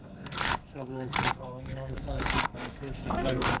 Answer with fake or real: fake